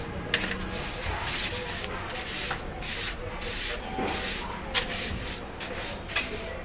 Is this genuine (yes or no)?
yes